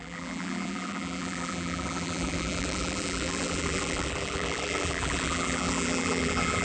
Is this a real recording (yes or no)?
no